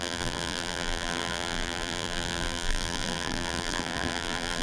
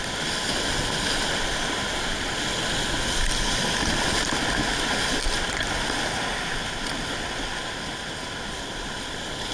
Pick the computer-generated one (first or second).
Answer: first